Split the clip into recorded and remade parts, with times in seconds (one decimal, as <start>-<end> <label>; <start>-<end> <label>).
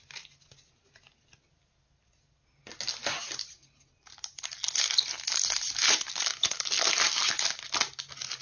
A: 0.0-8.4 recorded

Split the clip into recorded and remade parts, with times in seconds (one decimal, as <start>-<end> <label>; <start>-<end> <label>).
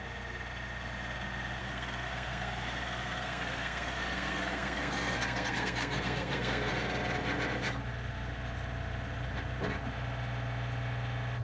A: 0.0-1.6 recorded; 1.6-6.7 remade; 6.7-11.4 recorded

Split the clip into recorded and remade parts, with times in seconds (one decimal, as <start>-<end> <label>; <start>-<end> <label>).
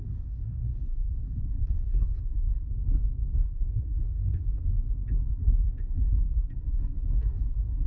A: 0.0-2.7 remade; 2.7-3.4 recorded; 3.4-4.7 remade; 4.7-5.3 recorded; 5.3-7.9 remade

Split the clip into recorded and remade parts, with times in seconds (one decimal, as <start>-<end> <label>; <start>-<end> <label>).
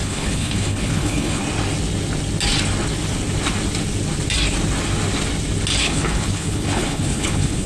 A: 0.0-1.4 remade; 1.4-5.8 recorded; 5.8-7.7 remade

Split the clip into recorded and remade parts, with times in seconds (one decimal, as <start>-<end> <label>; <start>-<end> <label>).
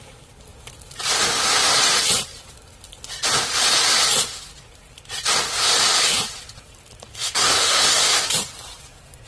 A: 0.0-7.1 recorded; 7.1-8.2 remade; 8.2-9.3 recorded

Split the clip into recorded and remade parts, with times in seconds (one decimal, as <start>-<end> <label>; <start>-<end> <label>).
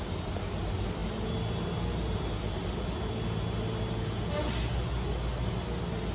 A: 0.0-6.1 recorded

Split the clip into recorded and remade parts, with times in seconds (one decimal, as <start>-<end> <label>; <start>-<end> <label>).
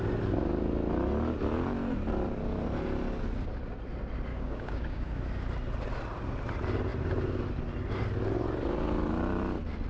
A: 0.0-4.3 recorded; 4.3-5.2 remade; 5.2-9.9 recorded